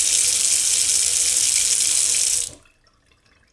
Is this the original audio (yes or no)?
yes